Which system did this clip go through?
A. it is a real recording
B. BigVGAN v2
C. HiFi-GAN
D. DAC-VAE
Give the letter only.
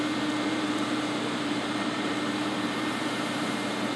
B